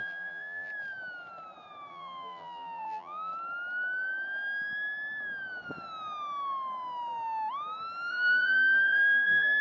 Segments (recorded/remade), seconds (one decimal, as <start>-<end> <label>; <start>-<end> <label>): 0.0-0.7 remade; 0.7-1.9 recorded; 1.9-3.3 remade; 3.3-8.1 recorded; 8.1-9.6 remade